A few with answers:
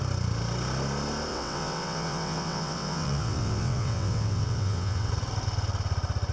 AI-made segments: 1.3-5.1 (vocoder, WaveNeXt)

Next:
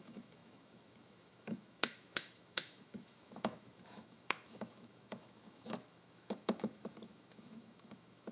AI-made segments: 0.0-8.3 (autoencoder, DAC-VAE)

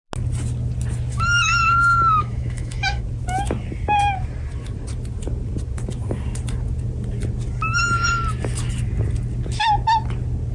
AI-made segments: 1.1-3.0 (autoencoder, DAC-VAE)

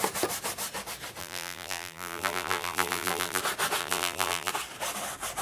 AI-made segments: 1.2-3.4 (vocoder, BigVGAN v2); 3.8-4.5

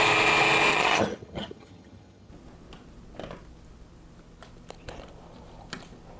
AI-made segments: 0.7-2.3 (vocoder, HiFi-GAN)

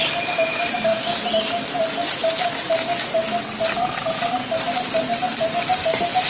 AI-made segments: none

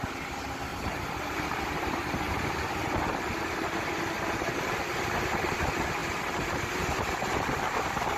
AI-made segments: 0.7-1.4 (vocoder, BigVGAN v2)